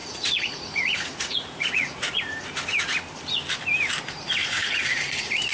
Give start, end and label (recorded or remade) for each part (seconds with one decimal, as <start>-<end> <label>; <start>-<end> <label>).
0.0-2.3 remade; 2.3-4.4 recorded; 4.4-5.5 remade